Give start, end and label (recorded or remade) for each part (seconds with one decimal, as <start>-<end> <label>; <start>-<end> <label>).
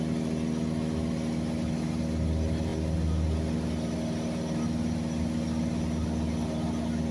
0.0-7.1 recorded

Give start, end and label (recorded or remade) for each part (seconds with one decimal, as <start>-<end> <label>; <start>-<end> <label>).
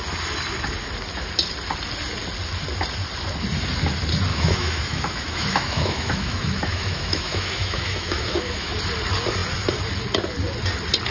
0.0-4.3 recorded; 4.3-8.7 remade; 8.7-11.1 recorded